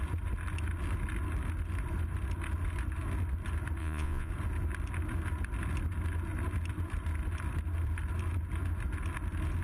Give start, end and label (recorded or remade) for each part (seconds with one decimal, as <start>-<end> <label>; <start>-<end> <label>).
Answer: 0.0-3.8 recorded; 3.8-4.3 remade; 4.3-9.6 recorded